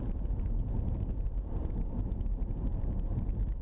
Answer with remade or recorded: remade